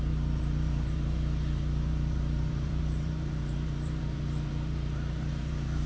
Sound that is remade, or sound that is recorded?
remade